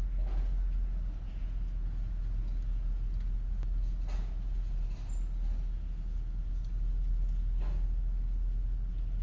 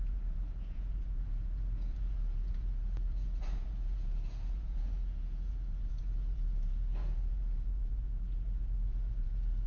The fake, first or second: second